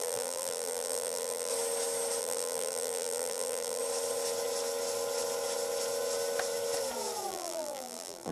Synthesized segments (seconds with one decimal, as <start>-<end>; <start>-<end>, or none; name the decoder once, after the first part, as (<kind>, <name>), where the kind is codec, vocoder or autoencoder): 0.0-1.5 (vocoder, BigVGAN v2); 2.2-3.8; 7.3-8.3